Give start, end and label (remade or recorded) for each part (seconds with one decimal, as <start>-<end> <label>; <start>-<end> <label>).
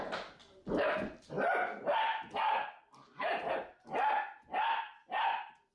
0.0-0.4 recorded; 0.4-1.3 remade; 1.3-2.4 recorded; 2.4-3.4 remade; 3.4-5.0 recorded; 5.0-5.7 remade